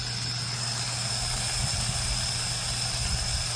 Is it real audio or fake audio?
real